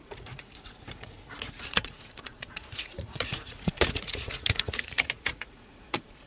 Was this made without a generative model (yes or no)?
no